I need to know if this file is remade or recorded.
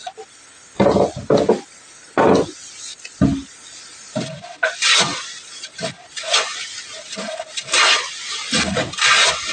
recorded